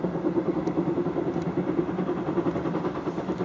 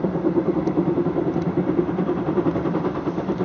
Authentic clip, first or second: first